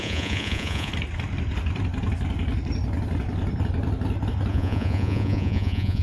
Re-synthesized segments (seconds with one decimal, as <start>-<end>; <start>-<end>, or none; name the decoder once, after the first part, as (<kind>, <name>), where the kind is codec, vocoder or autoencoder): 0.0-0.9 (vocoder, Vocos); 4.5-6.0